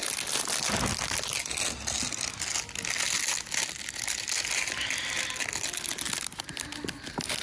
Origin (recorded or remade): recorded